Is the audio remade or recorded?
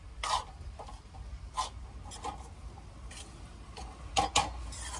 recorded